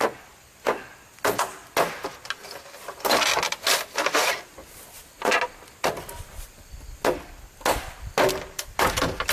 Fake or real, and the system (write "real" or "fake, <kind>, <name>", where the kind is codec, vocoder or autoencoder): real